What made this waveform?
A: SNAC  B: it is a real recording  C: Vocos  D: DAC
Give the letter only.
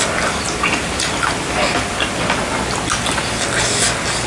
B